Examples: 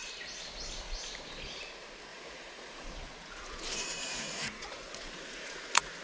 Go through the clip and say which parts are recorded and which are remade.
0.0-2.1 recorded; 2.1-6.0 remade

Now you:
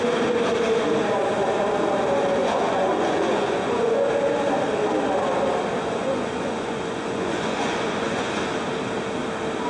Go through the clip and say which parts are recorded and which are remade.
0.0-2.4 recorded; 2.4-4.1 remade; 4.1-5.8 recorded; 5.8-8.4 remade; 8.4-9.7 recorded